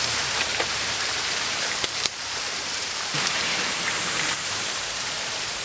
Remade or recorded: remade